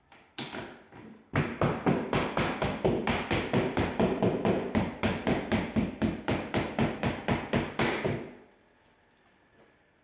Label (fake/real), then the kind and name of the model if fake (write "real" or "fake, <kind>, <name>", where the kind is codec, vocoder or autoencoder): real